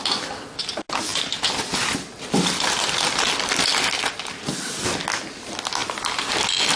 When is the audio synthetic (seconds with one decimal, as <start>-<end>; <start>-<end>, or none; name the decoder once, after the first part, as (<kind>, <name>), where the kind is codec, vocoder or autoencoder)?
1.1-3.2 (vocoder, BigVGAN v2); 5.8-6.8